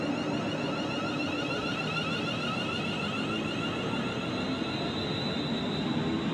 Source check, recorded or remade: recorded